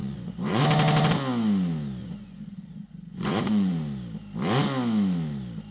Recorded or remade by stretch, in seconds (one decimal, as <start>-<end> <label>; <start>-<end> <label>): 0.0-0.6 remade; 0.6-2.0 recorded; 2.0-3.7 remade; 3.7-5.7 recorded